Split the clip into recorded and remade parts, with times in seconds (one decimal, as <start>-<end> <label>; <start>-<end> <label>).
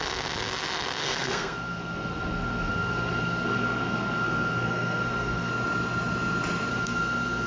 0.0-1.0 recorded; 1.0-5.5 remade; 5.5-6.7 recorded; 6.7-7.5 remade